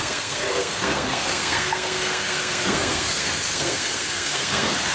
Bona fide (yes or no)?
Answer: no